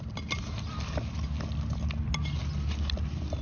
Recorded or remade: recorded